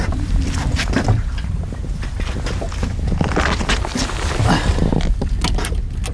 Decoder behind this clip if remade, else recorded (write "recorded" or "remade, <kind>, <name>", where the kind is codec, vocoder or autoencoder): recorded